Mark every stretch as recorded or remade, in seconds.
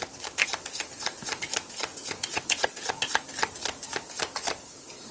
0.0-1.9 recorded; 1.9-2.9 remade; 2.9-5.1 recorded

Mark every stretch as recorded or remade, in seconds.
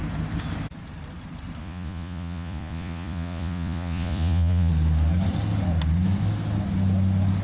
0.0-1.6 recorded; 1.6-4.7 remade; 4.7-7.4 recorded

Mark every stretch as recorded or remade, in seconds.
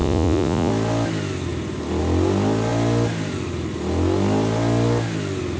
0.0-0.7 remade; 0.7-5.6 recorded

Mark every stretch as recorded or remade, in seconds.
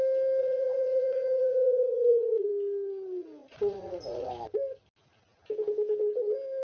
0.0-0.4 recorded; 0.4-2.5 remade; 2.5-3.4 recorded; 3.4-4.3 remade; 4.3-6.6 recorded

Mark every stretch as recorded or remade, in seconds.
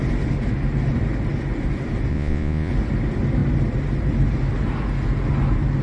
0.0-2.1 recorded; 2.1-2.7 remade; 2.7-5.8 recorded